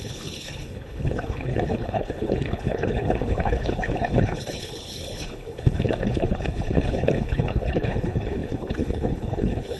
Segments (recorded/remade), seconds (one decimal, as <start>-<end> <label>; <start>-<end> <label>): 0.0-9.8 remade